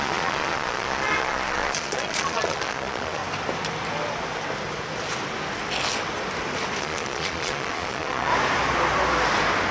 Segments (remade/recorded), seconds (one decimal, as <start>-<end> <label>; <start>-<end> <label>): 0.0-3.2 remade; 3.2-6.8 recorded; 6.8-8.3 remade; 8.3-9.7 recorded